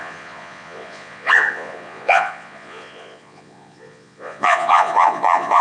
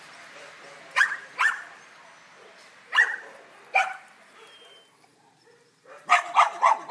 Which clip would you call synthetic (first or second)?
first